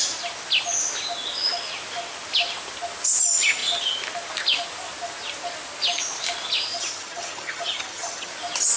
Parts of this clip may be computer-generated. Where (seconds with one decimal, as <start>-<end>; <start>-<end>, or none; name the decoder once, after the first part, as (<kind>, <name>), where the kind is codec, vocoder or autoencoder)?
6.7-8.3 (vocoder, HiFi-GAN)